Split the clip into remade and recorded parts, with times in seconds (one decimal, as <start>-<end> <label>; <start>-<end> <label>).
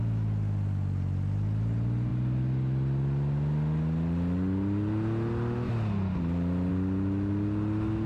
0.0-8.1 recorded